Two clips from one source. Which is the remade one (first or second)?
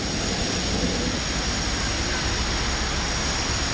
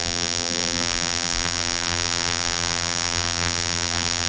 second